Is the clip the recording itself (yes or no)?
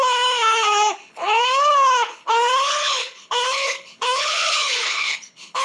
no